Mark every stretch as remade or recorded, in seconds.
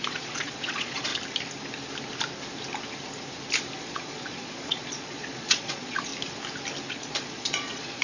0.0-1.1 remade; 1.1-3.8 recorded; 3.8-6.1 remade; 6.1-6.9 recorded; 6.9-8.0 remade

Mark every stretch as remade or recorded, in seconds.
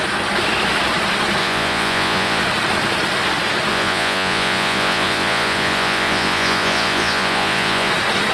0.0-1.4 recorded; 1.4-2.4 remade; 2.4-3.7 recorded; 3.7-7.9 remade; 7.9-8.3 recorded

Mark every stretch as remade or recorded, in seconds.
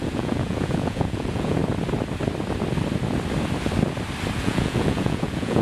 0.0-1.6 remade; 1.6-4.4 recorded; 4.4-5.6 remade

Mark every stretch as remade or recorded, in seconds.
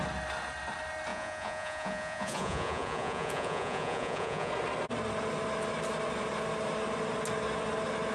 0.0-1.1 recorded; 1.1-4.5 remade; 4.5-8.1 recorded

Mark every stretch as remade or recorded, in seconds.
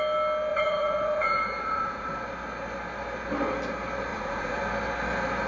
0.0-0.5 recorded; 0.5-2.1 remade; 2.1-4.1 recorded; 4.1-4.6 remade; 4.6-5.5 recorded